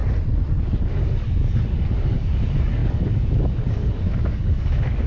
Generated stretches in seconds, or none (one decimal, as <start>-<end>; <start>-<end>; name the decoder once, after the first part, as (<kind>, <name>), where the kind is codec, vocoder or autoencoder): 2.0-5.1 (codec, DAC)

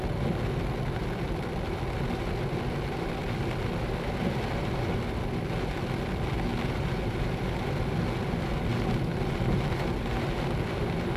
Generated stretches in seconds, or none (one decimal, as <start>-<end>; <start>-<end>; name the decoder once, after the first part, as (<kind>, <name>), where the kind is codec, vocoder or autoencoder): none

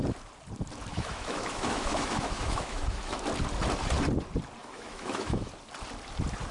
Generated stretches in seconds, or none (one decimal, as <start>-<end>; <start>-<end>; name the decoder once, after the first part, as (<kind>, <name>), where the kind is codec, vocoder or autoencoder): 0.9-3.2 (autoencoder, DAC-VAE); 4.6-5.5

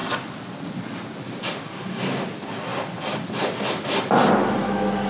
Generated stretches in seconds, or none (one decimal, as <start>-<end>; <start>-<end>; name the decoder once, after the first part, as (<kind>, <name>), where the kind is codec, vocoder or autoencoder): none

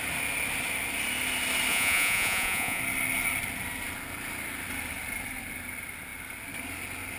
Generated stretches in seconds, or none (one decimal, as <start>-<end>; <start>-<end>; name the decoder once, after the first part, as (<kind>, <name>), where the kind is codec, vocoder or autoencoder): 1.7-2.8 (vocoder, Vocos)

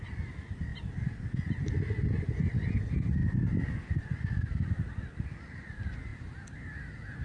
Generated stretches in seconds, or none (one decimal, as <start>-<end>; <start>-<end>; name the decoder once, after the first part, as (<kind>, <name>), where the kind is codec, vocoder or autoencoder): 3.2-4.0 (vocoder, BigVGAN v2); 6.1-7.2

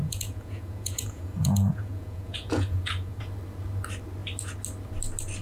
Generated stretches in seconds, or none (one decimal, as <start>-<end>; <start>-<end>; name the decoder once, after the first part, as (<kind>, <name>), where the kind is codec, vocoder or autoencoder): 0.0-3.2 (vocoder, Vocos)

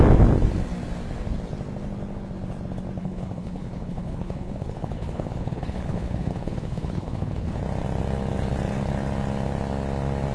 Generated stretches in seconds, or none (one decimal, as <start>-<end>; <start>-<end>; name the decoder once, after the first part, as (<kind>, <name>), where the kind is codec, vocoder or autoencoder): 3.0-7.6 (codec, HILCodec)